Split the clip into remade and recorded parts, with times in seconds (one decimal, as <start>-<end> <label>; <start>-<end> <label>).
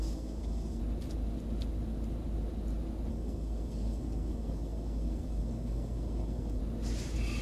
0.0-0.8 remade; 0.8-3.1 recorded; 3.1-6.6 remade; 6.6-7.4 recorded